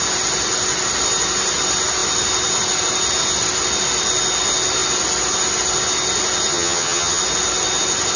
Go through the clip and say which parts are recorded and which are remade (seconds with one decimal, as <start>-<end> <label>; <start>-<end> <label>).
0.0-6.5 recorded; 6.5-7.2 remade; 7.2-8.2 recorded

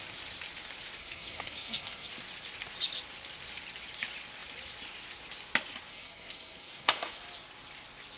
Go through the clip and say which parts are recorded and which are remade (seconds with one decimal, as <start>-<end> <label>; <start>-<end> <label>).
0.0-1.0 recorded; 1.0-2.1 remade; 2.1-5.9 recorded; 5.9-7.2 remade; 7.2-8.2 recorded

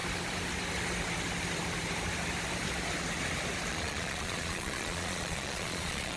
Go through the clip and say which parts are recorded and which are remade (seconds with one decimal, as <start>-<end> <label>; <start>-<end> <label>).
0.0-3.7 recorded; 3.7-6.2 remade

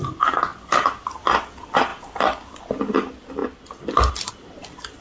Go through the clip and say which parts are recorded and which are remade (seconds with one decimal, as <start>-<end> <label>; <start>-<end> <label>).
0.0-5.0 recorded

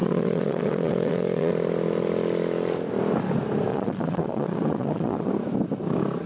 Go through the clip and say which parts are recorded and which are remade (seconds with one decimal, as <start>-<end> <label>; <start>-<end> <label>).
0.0-1.5 remade; 1.5-3.7 recorded; 3.7-5.3 remade; 5.3-6.3 recorded

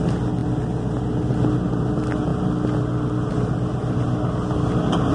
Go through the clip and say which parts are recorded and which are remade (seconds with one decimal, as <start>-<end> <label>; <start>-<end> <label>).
0.0-5.1 recorded